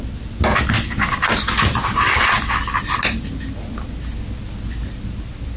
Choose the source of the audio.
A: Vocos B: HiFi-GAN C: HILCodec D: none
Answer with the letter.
D